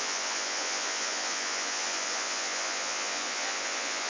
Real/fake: fake